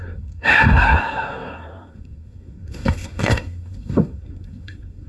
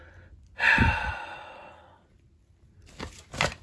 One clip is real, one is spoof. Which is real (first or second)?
second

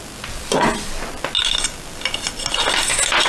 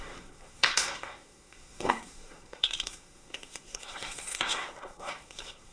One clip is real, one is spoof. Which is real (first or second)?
first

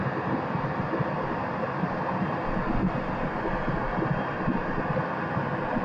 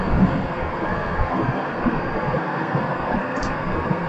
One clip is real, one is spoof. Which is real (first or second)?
first